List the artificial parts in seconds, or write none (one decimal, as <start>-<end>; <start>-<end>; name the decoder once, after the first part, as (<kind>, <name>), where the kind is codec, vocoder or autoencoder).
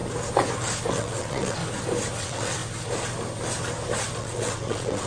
0.9-1.6 (vocoder, WaveNeXt); 2.2-2.6; 4.2-5.1